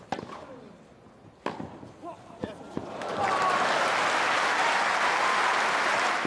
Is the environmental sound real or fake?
real